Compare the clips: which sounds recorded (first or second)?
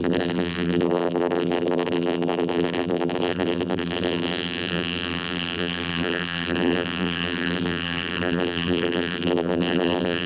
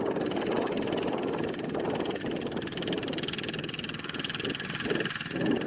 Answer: second